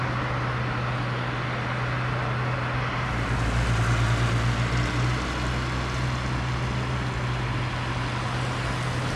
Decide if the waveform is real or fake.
real